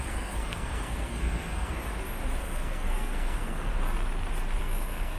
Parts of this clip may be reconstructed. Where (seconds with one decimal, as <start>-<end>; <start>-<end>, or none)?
0.0-1.8; 2.4-3.7; 4.6-5.2